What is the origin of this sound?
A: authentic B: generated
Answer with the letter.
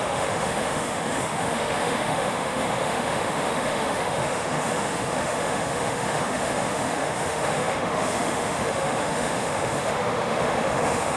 B